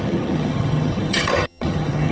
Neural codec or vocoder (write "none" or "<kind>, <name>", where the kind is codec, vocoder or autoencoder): vocoder, HiFi-GAN